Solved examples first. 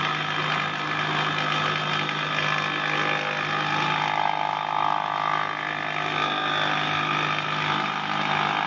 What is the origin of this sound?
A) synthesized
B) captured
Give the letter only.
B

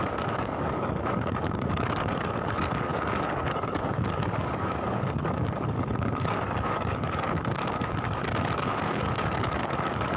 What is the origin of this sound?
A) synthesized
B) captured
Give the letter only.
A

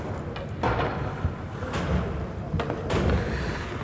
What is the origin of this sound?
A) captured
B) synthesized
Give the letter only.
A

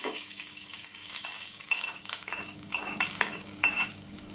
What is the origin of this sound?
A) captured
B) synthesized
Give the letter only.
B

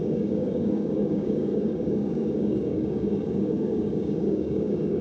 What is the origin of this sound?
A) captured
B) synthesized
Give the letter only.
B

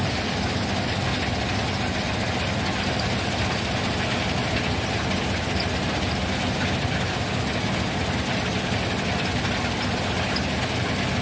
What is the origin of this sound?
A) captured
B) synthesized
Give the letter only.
A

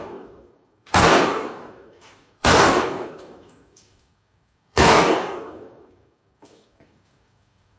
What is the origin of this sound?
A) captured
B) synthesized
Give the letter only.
B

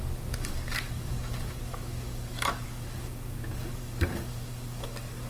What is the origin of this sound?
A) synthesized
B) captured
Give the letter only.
A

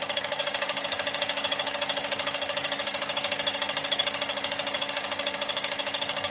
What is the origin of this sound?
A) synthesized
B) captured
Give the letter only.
A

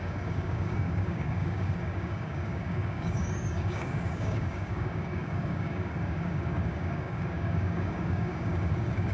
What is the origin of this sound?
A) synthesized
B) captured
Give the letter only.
A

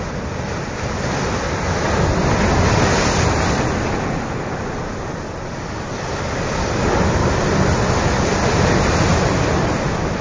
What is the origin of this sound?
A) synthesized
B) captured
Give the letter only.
B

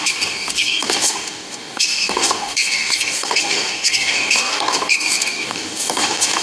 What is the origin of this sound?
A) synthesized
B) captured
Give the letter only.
A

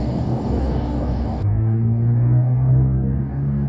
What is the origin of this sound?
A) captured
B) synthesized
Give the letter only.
B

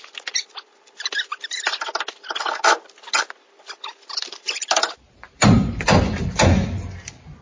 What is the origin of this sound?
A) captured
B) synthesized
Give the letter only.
A